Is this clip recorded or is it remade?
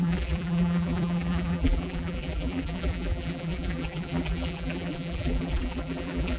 remade